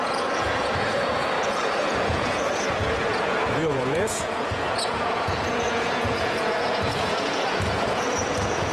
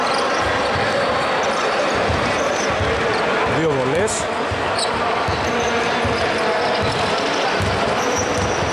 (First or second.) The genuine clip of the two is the second